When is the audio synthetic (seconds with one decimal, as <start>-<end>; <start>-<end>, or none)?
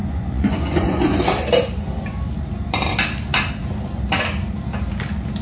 0.0-1.2